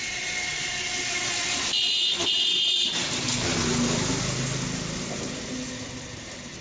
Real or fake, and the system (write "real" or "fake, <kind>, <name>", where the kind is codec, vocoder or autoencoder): real